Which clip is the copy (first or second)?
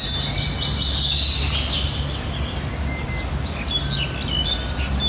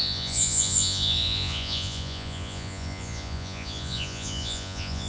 second